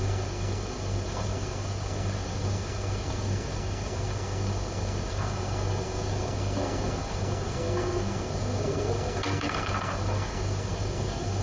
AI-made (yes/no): yes